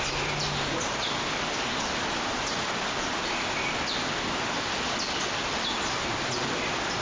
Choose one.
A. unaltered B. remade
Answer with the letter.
A